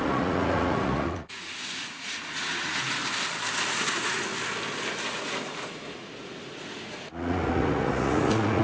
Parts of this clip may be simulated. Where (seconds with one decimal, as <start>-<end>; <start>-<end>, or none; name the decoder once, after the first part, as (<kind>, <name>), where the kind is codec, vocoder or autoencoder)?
0.0-3.0 (vocoder, Vocos); 3.7-4.3; 5.0-8.6